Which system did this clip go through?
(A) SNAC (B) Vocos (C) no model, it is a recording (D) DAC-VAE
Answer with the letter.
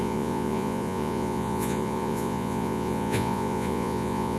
B